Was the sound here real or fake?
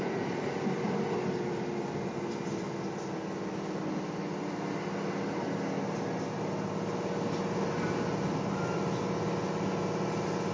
real